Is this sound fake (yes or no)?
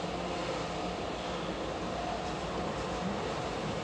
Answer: no